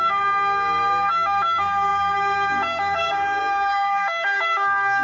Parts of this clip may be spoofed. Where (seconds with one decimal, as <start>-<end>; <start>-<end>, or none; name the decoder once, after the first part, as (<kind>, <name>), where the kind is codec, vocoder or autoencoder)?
0.0-5.0 (codec, DAC)